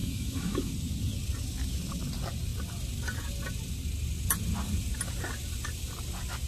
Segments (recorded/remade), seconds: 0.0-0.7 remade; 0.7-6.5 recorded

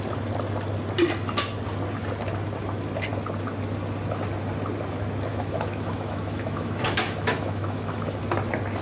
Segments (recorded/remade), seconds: 0.0-5.3 recorded; 5.3-8.2 remade; 8.2-8.8 recorded